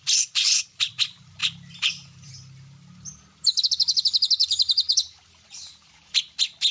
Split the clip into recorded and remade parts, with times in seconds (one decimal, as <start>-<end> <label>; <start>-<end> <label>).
0.0-1.4 recorded; 1.4-2.3 remade; 2.3-4.4 recorded; 4.4-6.2 remade; 6.2-6.7 recorded

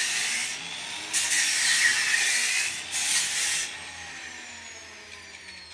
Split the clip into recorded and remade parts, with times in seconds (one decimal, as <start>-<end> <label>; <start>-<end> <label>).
0.0-5.7 recorded